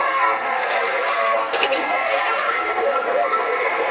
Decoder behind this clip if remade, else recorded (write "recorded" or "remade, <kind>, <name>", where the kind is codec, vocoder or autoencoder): remade, codec, SNAC